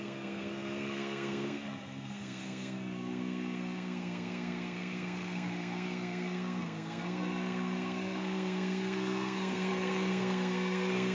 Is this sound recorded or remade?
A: remade